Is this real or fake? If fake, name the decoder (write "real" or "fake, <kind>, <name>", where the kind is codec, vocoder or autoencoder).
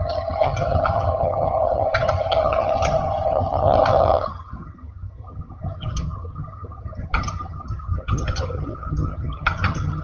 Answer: fake, vocoder, HiFi-GAN